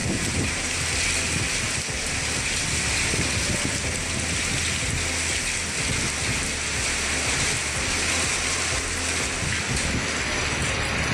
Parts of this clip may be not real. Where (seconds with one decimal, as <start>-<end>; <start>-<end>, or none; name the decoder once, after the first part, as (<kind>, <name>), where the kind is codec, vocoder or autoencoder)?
0.0-0.8 (vocoder, BigVGAN v2)